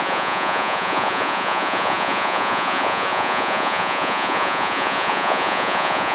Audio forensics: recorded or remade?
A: remade